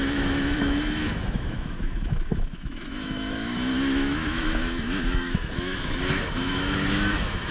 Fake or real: fake